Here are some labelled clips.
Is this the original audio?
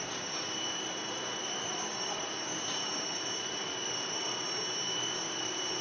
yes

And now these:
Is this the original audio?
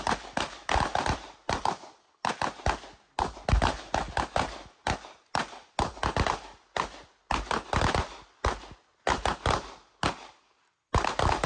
yes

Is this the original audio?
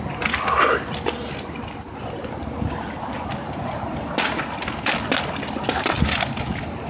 yes